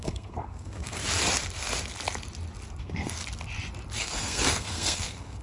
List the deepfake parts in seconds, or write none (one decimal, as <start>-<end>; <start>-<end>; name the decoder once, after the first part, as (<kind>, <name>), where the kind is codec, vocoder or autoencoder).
0.0-1.0 (codec, SNAC); 2.8-3.2; 4.0-5.4